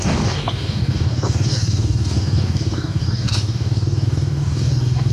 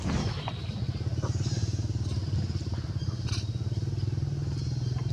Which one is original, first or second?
second